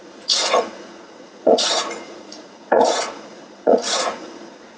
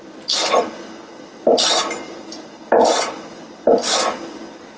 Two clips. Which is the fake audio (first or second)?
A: first